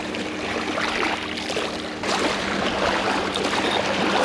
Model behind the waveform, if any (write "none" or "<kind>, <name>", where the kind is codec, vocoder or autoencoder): none